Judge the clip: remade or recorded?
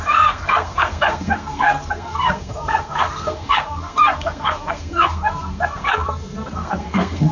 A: remade